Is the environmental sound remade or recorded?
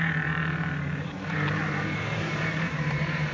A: remade